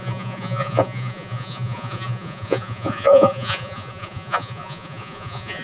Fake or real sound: fake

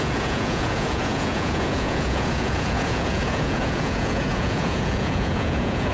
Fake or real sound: fake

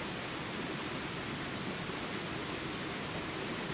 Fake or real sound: real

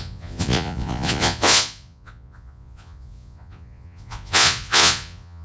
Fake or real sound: fake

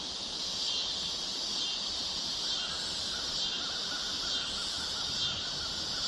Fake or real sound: real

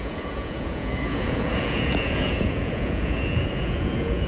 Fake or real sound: fake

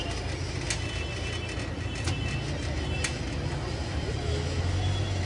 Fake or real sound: real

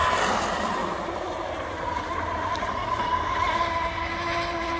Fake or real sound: real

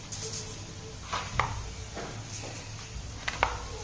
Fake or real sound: real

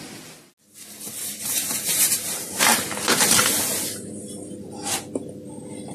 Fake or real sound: real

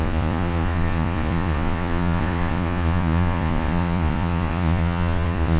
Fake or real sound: fake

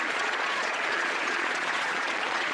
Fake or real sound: fake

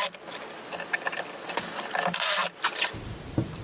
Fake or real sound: real